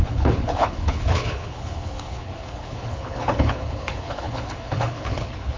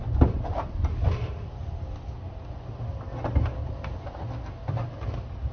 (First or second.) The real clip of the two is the second